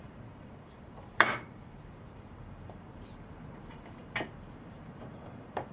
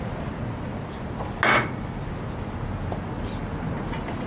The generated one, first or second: first